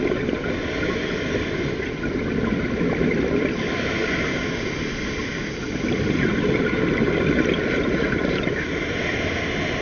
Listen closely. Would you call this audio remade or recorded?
recorded